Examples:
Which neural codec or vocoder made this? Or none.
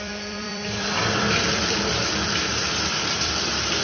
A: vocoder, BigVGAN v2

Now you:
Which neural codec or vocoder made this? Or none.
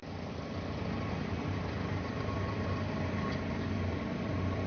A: vocoder, BigVGAN v2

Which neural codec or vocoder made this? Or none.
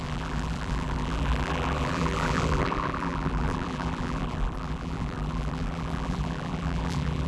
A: vocoder, BigVGAN v2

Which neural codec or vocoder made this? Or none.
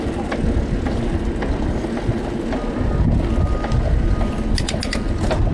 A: none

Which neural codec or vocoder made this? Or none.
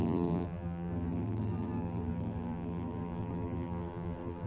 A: vocoder, BigVGAN v2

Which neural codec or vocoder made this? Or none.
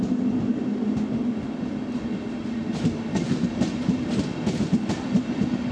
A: none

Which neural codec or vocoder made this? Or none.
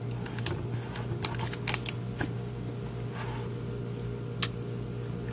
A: none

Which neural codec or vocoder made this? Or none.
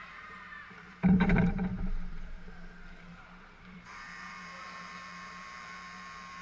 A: vocoder, BigVGAN v2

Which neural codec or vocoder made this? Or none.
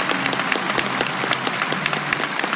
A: none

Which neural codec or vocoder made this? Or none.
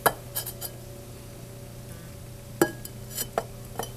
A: none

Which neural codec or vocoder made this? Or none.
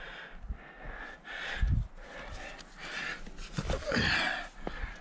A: none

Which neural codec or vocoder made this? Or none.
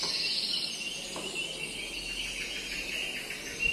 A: none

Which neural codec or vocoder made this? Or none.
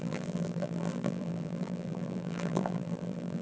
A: vocoder, BigVGAN v2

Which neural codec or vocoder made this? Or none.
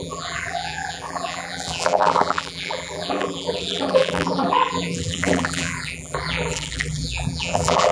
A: vocoder, BigVGAN v2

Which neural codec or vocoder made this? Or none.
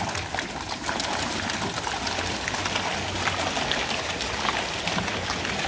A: none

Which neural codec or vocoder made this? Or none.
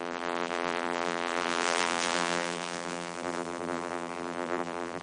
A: vocoder, BigVGAN v2